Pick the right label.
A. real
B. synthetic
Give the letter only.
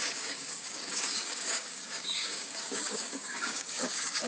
B